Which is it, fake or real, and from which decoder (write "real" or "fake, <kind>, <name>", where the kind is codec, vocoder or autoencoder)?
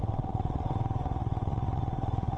fake, vocoder, WaveNeXt